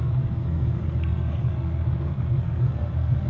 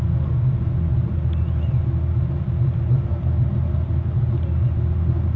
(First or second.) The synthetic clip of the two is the first